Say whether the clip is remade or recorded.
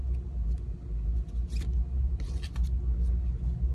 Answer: recorded